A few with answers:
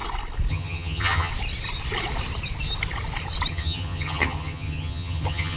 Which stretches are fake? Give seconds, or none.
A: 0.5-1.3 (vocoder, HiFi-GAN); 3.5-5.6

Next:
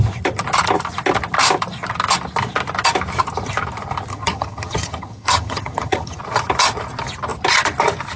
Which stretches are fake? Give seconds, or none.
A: 4.1-6.2 (vocoder, HiFi-GAN)

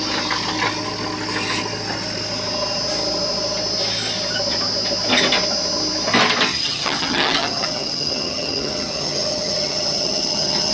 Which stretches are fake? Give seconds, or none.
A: 6.5-10.7 (vocoder, HiFi-GAN)

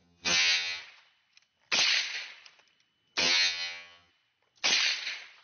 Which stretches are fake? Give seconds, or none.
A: 0.0-0.8 (vocoder, HiFi-GAN); 3.2-4.1

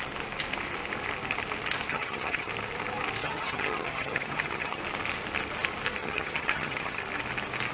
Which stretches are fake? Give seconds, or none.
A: 1.9-2.5 (vocoder, HiFi-GAN); 3.2-4.8; 6.0-7.0

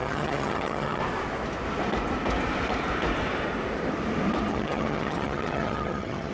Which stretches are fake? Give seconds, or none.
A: 0.0-1.0 (vocoder, HiFi-GAN); 4.5-6.3